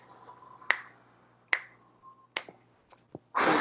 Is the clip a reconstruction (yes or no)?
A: no